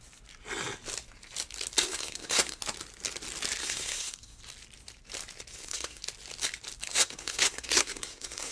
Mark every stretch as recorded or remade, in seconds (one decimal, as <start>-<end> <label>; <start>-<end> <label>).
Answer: 0.0-1.9 recorded; 1.9-2.6 remade; 2.6-3.6 recorded; 3.6-4.4 remade; 4.4-5.5 recorded; 5.5-6.0 remade; 6.0-6.9 recorded; 6.9-8.5 remade

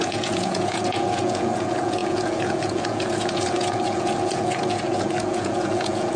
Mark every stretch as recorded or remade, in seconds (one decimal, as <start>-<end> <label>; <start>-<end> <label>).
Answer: 0.0-6.2 remade

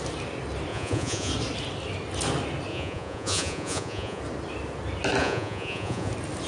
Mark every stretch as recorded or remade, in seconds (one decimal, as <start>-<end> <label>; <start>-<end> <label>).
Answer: 0.0-0.7 recorded; 0.7-1.3 remade; 1.3-2.7 recorded; 2.7-4.2 remade; 4.2-5.2 recorded; 5.2-6.1 remade; 6.1-6.5 recorded

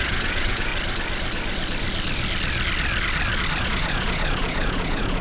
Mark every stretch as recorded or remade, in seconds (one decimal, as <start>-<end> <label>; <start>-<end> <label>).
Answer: 0.0-0.7 remade; 0.7-3.6 recorded; 3.6-5.2 remade

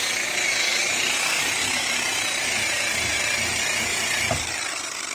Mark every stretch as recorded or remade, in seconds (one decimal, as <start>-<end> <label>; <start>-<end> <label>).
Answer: 0.0-0.7 recorded; 0.7-3.8 remade; 3.8-5.1 recorded

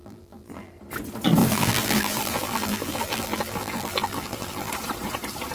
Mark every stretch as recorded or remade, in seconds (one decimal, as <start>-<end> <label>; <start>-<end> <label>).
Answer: 0.0-0.7 remade; 0.7-1.4 recorded; 1.4-4.7 remade; 4.7-5.5 recorded

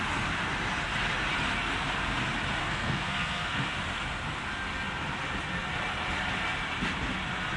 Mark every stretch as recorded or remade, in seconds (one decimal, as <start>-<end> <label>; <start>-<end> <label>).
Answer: 0.0-2.6 recorded; 2.6-3.7 remade; 3.7-7.6 recorded